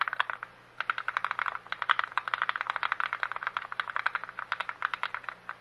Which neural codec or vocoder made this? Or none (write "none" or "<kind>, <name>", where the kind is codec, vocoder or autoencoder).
none